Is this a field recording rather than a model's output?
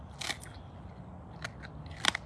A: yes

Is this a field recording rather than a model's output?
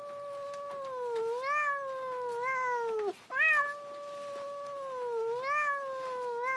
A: yes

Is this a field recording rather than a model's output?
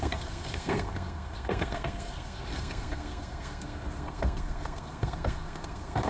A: no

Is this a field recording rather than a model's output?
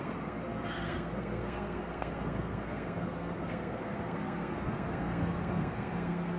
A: no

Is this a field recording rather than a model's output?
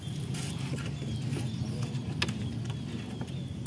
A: yes